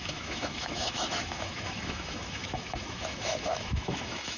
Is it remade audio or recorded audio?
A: remade